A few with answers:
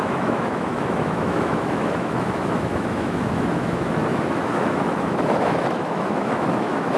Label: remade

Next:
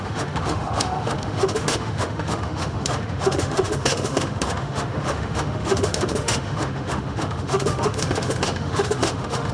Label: remade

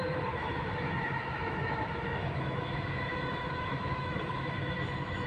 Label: remade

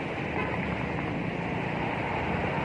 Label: recorded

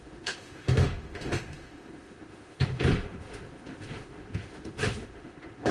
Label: remade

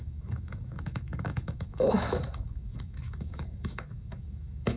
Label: remade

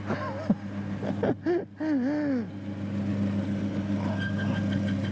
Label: recorded